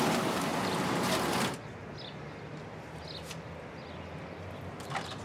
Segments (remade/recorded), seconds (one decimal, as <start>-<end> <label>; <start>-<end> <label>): 0.0-5.2 recorded